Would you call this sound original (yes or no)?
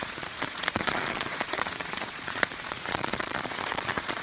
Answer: no